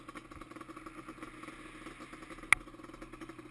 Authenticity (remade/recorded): recorded